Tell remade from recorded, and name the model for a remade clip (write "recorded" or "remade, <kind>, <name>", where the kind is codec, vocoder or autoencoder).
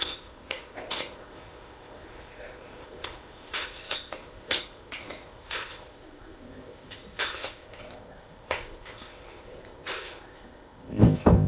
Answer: remade, codec, ZipCodec